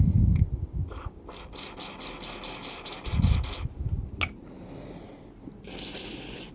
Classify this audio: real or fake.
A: real